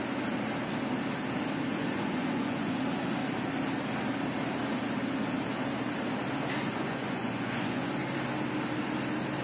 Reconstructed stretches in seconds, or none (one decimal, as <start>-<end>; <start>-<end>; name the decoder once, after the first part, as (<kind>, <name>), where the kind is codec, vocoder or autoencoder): 1.7-2.8 (vocoder, Vocos); 6.6-7.9